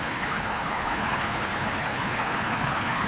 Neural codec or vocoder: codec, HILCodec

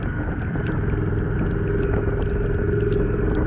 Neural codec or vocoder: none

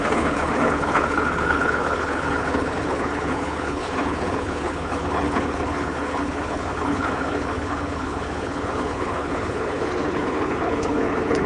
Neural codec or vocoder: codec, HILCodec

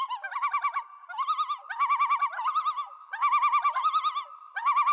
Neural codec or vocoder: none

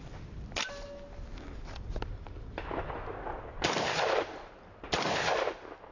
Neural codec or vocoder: none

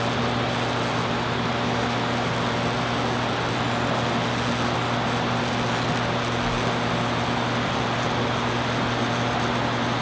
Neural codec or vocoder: none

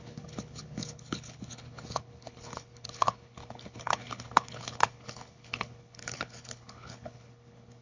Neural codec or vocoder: codec, HILCodec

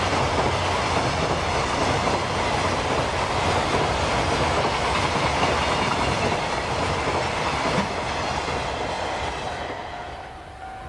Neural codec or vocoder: none